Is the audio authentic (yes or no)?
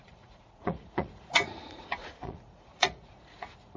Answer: no